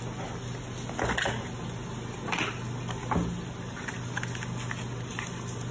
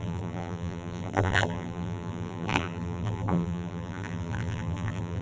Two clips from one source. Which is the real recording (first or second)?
first